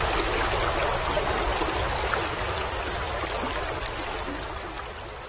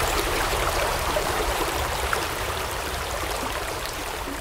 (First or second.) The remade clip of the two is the second